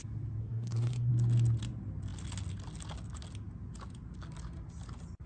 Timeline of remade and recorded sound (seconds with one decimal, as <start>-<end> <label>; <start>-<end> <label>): 0.0-0.4 recorded; 0.4-1.1 remade; 1.1-5.3 recorded